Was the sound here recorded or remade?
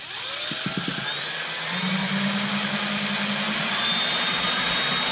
recorded